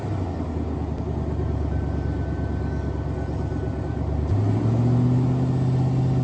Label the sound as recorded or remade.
recorded